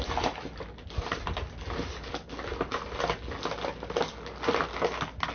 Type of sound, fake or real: real